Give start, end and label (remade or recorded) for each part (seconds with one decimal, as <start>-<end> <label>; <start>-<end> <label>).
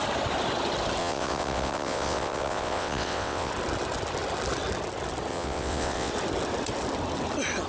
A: 0.0-1.0 recorded; 1.0-3.5 remade; 3.5-5.3 recorded; 5.3-6.1 remade; 6.1-7.7 recorded